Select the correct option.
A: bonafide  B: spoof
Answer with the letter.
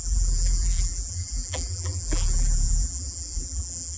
B